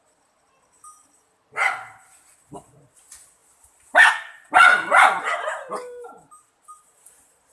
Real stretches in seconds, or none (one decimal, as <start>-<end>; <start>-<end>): 0.0-7.5